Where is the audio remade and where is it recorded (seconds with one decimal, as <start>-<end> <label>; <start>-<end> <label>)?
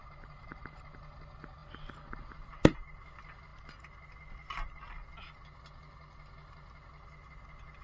0.0-1.0 remade; 1.0-7.8 recorded